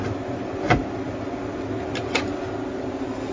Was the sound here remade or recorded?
recorded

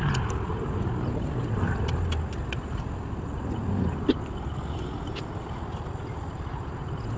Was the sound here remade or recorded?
recorded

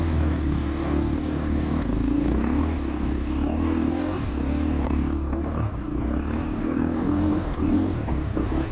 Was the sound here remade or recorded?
remade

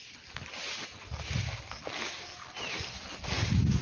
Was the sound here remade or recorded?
recorded